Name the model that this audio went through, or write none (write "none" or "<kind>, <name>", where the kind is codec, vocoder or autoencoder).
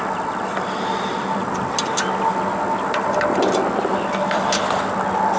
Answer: none